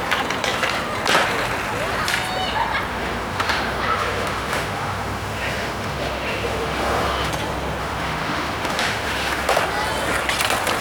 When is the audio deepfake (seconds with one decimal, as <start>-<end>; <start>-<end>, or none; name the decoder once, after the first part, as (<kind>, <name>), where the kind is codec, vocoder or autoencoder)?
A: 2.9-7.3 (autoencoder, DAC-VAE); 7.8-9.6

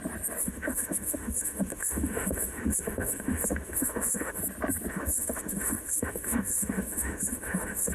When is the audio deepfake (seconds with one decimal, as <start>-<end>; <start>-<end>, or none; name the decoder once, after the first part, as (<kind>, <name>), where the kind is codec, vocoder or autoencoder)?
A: 0.4-4.4 (autoencoder, DAC-VAE); 4.9-7.9

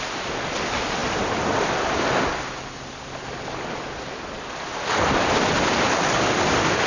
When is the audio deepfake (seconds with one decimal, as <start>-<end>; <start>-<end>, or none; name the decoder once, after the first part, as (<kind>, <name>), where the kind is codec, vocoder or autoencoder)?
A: none

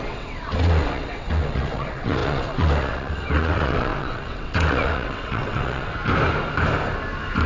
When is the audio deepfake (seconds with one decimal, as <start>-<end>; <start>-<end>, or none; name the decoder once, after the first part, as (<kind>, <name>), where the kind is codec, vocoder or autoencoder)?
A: 0.0-5.9 (vocoder, WaveNeXt)

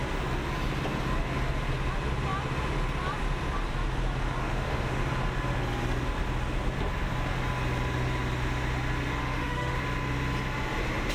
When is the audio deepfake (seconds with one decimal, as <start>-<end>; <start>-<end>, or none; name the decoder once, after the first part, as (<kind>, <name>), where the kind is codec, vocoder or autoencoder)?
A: 4.4-5.0 (autoencoder, DAC-VAE); 9.2-9.8

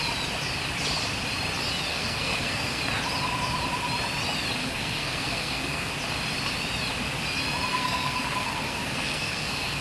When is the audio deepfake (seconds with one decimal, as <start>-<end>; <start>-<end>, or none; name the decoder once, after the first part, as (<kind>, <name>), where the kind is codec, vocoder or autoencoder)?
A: 1.9-2.8 (codec, SNAC); 4.6-5.9; 7.7-9.8

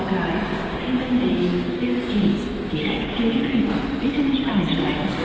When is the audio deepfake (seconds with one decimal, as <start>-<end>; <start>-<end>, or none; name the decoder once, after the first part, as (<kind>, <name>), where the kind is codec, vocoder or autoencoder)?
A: 0.5-3.6 (codec, DAC)

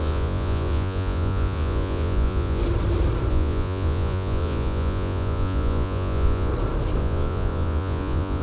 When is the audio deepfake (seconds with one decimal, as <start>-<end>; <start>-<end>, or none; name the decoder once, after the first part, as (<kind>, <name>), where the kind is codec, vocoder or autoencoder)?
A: 0.0-2.6 (vocoder, Vocos); 3.3-6.5; 7.0-8.4